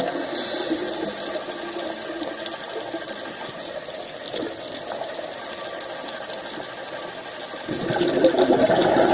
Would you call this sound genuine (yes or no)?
yes